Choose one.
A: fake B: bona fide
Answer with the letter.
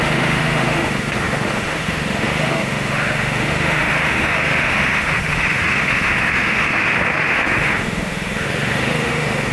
A